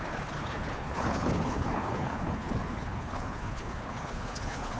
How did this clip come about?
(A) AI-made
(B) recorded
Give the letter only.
A